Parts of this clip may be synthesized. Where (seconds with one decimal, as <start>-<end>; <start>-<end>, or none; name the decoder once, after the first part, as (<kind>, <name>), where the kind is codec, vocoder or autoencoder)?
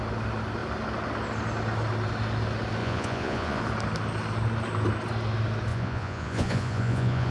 2.8-3.6 (vocoder, Vocos); 5.7-7.3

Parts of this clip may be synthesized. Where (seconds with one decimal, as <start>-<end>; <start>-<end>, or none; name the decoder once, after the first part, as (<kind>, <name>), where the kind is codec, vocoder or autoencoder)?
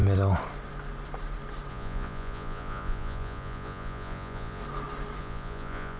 1.7-4.6 (vocoder, Vocos); 5.2-6.0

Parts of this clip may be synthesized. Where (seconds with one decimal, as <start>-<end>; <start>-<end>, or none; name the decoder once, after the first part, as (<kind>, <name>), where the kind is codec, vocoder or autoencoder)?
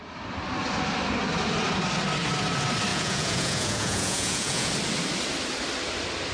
2.9-4.7 (vocoder, Vocos)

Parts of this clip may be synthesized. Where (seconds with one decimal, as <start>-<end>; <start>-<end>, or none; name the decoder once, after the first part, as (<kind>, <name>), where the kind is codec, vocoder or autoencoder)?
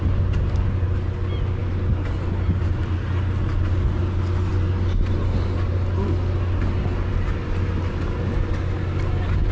none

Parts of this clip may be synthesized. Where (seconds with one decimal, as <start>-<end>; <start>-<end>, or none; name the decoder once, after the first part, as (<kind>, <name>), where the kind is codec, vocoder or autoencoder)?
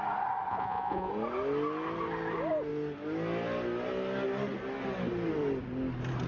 0.5-1.1 (vocoder, Vocos)